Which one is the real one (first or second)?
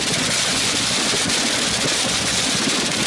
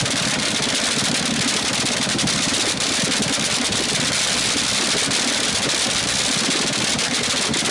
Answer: second